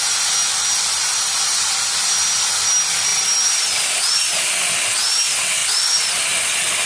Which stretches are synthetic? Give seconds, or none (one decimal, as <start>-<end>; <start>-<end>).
none